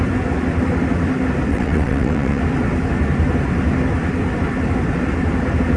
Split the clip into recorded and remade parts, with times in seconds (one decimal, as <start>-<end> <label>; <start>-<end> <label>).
0.0-1.5 recorded; 1.5-2.4 remade; 2.4-5.8 recorded